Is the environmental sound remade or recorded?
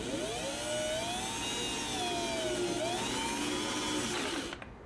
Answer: recorded